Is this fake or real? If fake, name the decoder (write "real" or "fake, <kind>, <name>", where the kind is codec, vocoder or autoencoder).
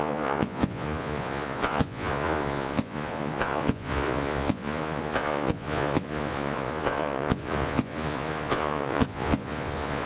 fake, vocoder, Vocos